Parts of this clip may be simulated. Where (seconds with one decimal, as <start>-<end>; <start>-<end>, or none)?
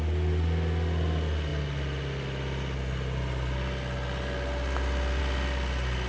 none